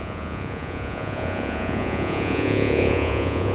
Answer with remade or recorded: remade